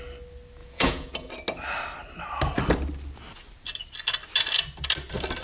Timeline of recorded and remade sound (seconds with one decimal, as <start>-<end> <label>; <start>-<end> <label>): 0.0-0.6 recorded; 0.6-1.3 remade; 1.3-5.4 recorded